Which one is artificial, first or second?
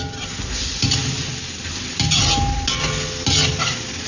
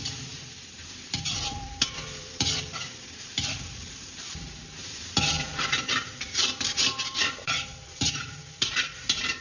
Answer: second